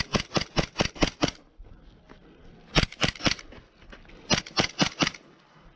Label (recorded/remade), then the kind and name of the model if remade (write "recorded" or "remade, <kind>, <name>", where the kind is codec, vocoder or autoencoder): recorded